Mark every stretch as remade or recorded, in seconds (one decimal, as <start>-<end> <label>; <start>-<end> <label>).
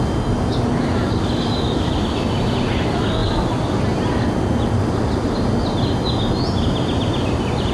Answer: 0.0-7.7 recorded